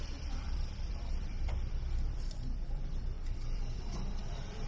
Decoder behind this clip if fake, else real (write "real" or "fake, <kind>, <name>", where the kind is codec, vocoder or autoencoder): fake, vocoder, BigVGAN v2